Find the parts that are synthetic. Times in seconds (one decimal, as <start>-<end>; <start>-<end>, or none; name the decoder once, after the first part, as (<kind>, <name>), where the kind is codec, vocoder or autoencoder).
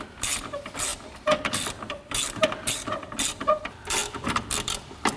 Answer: 0.0-5.2 (vocoder, BigVGAN v2)